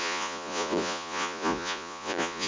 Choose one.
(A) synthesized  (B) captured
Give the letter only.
A